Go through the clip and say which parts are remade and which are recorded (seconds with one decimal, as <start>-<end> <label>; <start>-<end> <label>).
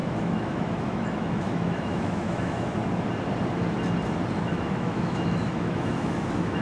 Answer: 0.0-2.8 remade; 2.8-4.4 recorded; 4.4-6.6 remade